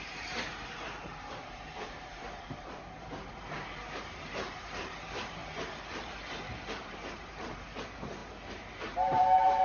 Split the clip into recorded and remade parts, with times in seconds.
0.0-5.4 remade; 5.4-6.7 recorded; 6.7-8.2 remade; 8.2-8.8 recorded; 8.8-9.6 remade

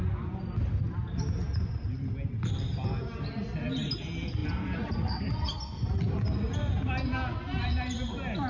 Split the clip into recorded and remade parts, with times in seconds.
0.0-8.5 recorded

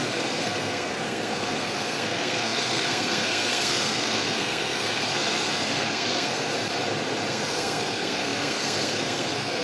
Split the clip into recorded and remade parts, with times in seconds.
0.0-6.5 remade; 6.5-7.3 recorded; 7.3-9.6 remade